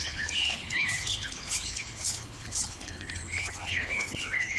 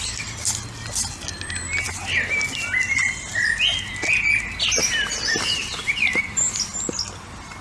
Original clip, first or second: second